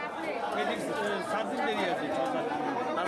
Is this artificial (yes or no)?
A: no